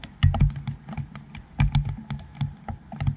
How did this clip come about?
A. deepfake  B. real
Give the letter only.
B